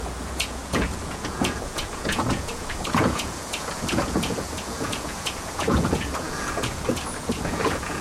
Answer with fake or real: fake